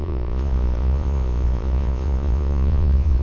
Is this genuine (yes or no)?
no